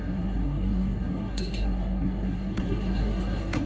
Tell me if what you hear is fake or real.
fake